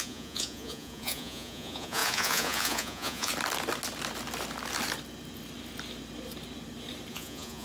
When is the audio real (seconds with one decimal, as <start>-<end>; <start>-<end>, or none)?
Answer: 3.3-7.1